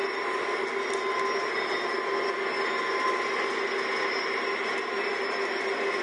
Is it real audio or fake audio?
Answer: real